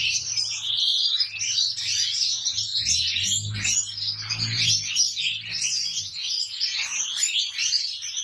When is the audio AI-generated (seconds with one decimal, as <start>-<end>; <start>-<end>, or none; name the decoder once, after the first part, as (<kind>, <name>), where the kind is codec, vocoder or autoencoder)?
0.0-2.7 (vocoder, BigVGAN v2); 7.0-8.2